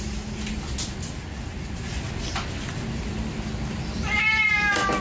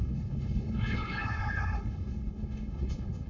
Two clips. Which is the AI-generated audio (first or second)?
second